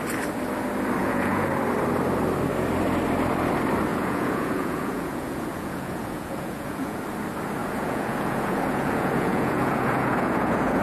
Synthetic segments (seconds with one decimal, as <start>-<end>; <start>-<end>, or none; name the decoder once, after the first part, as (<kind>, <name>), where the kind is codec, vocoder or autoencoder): 1.0-1.5 (vocoder, Vocos); 3.9-7.0; 7.6-10.8